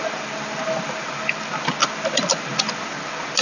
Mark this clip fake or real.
real